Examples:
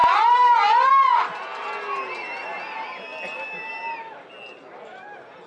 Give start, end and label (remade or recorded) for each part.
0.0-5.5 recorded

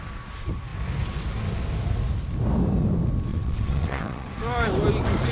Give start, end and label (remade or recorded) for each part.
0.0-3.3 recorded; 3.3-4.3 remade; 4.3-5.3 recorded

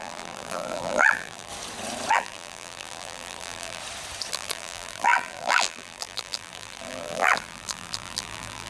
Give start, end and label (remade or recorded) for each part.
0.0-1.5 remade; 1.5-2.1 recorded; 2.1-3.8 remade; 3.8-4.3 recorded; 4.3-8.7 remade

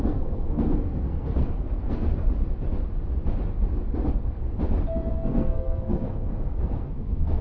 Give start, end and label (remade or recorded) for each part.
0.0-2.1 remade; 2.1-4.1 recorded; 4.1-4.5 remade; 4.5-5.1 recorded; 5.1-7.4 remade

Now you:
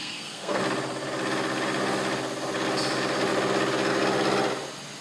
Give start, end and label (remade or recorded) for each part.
0.0-0.6 remade; 0.6-5.0 recorded

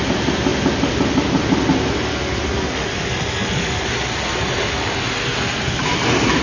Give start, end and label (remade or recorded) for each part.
0.0-6.4 recorded

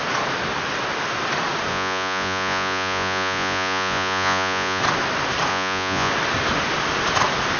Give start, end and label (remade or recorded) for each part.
0.0-1.7 recorded; 1.7-4.8 remade; 4.8-5.5 recorded; 5.5-6.1 remade; 6.1-7.6 recorded

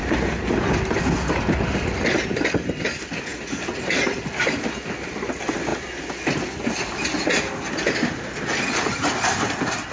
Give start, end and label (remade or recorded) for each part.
0.0-1.0 remade; 1.0-9.9 recorded